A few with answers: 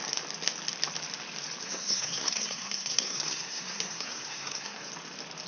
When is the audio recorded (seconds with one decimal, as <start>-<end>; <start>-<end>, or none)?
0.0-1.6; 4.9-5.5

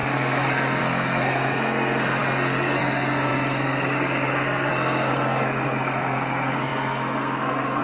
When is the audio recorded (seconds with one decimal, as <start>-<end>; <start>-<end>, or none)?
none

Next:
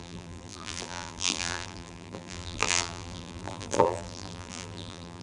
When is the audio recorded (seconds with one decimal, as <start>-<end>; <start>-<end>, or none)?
none